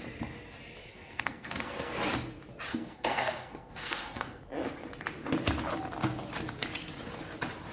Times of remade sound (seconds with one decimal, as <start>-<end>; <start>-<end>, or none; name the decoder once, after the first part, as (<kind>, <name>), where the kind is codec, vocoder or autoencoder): 0.9-1.9 (codec, SNAC); 2.7-4.4